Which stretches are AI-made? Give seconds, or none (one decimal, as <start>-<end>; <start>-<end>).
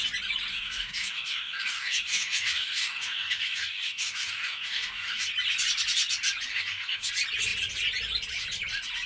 0.5-5.3; 6.5-7.1